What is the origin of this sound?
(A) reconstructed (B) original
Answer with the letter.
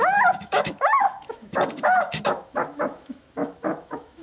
A